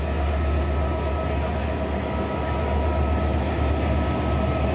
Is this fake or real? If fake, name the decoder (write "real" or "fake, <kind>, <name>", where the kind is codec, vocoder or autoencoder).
real